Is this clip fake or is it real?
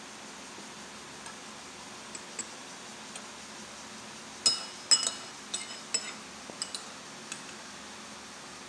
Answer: real